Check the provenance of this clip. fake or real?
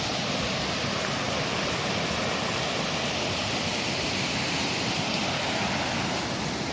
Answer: real